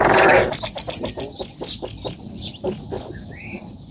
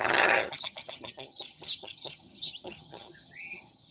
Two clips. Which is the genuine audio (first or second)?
first